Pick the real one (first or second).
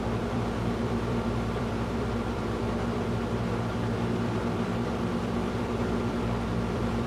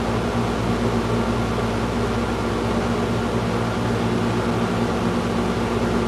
second